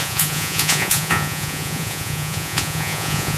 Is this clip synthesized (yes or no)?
yes